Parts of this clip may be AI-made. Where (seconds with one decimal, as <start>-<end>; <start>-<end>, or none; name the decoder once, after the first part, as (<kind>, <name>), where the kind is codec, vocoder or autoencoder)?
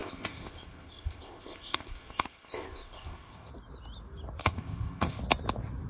0.0-3.5 (codec, ZipCodec); 4.4-5.2